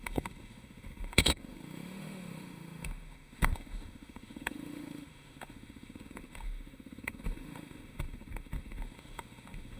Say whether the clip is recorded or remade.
remade